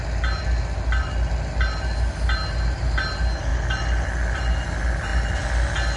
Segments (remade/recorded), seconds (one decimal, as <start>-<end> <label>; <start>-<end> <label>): 0.0-6.0 recorded